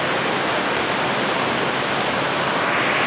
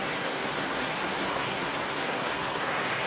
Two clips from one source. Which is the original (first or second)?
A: first